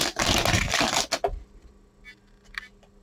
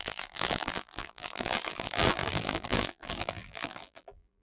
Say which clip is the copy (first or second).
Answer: second